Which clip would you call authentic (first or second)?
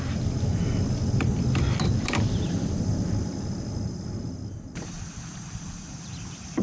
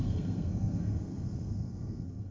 first